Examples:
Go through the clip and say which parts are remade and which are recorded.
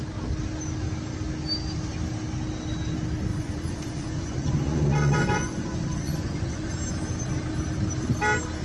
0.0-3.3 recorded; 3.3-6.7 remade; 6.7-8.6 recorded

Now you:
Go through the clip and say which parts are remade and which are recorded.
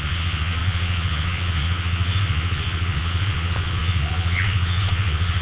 0.0-5.4 remade